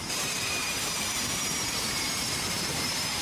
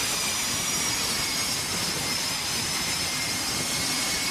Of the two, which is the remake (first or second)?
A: first